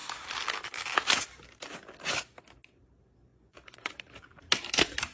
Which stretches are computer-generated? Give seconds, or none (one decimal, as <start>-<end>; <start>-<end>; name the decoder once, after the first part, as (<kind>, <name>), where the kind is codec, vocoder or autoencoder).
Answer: 3.3-3.9 (vocoder, Vocos)